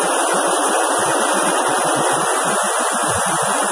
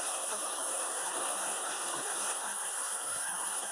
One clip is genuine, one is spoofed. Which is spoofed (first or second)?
second